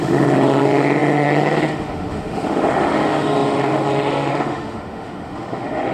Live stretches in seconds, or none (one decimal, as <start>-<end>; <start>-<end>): none